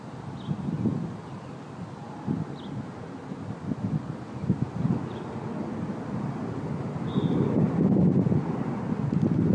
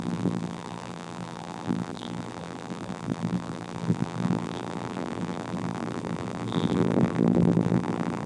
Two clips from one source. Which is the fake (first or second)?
second